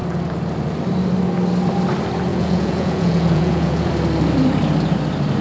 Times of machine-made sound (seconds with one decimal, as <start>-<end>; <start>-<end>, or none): 2.3-3.9